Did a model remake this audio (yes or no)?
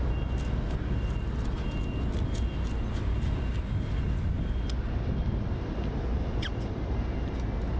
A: no